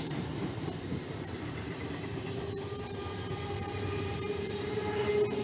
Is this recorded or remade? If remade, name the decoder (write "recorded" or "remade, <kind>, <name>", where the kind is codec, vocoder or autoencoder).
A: remade, vocoder, BigVGAN v2